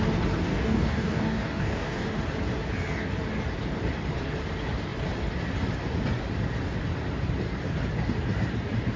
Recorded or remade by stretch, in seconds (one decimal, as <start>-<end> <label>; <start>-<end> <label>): 0.0-0.5 recorded; 0.5-2.1 remade; 2.1-9.0 recorded